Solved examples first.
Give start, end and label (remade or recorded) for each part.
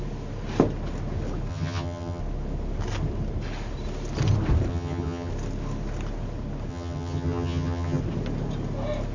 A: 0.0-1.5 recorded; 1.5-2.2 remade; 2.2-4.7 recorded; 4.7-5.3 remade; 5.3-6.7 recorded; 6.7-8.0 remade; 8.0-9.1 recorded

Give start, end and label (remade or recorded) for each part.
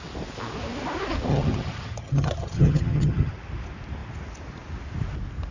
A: 0.0-1.3 recorded; 1.3-3.3 remade; 3.3-5.5 recorded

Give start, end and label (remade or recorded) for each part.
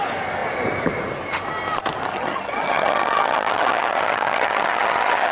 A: 0.0-2.1 recorded; 2.1-5.3 remade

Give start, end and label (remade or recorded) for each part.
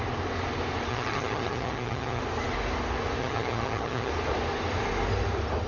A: 0.0-0.9 recorded; 0.9-2.2 remade; 2.2-3.2 recorded; 3.2-4.1 remade; 4.1-5.7 recorded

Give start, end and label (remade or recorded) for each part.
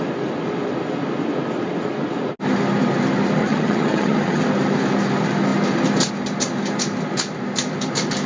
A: 0.0-3.4 recorded; 3.4-4.4 remade; 4.4-8.3 recorded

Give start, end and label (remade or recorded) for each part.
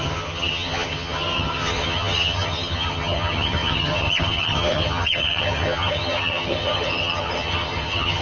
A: 0.0-8.2 remade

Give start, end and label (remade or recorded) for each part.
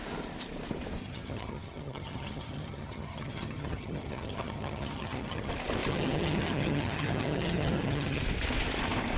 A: 0.0-1.0 recorded; 1.0-5.5 remade; 5.5-5.9 recorded; 5.9-8.2 remade; 8.2-9.2 recorded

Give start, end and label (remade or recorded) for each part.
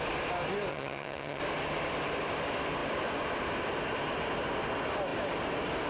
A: 0.0-0.7 recorded; 0.7-1.4 remade; 1.4-5.9 recorded